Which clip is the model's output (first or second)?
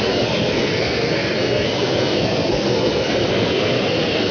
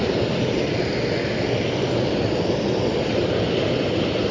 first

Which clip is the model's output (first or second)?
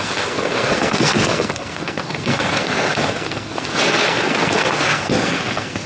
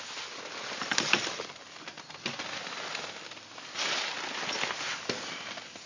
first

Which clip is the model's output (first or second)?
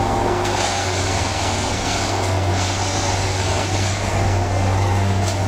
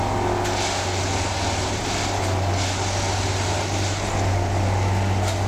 first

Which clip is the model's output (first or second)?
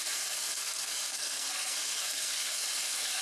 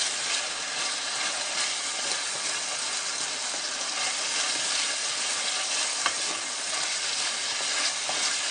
first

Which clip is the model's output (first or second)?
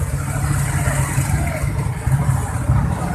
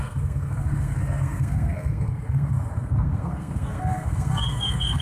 second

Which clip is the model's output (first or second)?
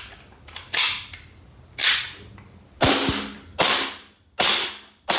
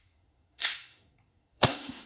second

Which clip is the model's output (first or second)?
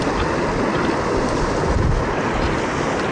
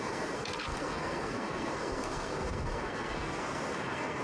second